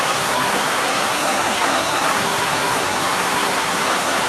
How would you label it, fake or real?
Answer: fake